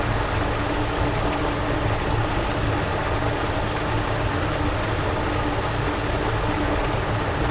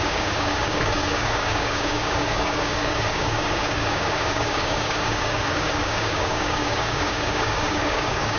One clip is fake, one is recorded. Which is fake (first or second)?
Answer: second